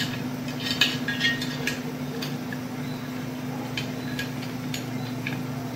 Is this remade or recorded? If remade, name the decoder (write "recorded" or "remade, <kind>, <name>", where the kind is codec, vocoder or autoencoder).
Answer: recorded